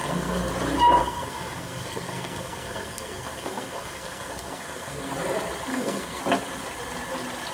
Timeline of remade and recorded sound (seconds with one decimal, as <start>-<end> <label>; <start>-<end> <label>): 0.0-0.5 remade; 0.5-1.0 recorded; 1.0-5.1 remade; 5.1-5.7 recorded; 5.7-6.2 remade; 6.2-7.5 recorded